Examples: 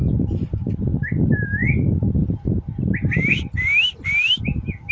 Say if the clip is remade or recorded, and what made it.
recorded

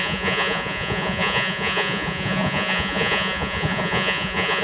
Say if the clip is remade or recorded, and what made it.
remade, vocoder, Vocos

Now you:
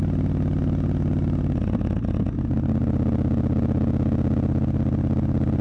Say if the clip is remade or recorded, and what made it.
recorded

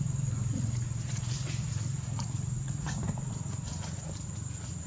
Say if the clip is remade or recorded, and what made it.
remade, vocoder, Vocos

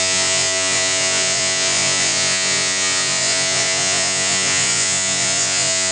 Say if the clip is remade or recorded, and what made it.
remade, vocoder, Vocos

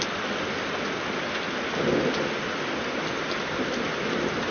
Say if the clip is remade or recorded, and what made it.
recorded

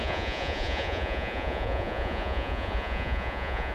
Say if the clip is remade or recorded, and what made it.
remade, vocoder, Vocos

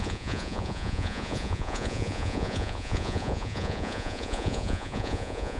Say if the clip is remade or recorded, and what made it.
remade, vocoder, Vocos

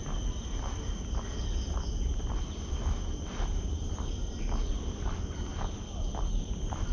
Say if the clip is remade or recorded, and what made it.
recorded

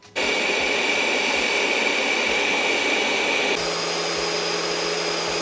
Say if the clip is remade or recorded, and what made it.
recorded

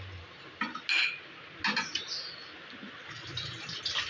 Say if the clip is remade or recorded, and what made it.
recorded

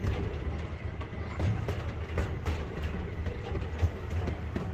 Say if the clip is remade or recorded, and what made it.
recorded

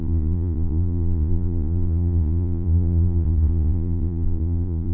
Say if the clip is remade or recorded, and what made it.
remade, vocoder, Vocos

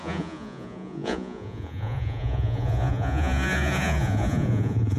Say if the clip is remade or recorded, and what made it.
remade, vocoder, Vocos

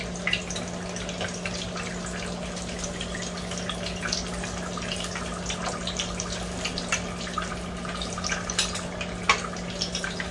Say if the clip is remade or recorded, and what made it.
recorded